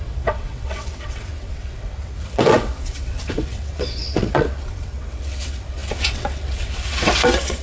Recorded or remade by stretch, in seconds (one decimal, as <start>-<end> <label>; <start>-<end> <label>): 0.0-7.6 remade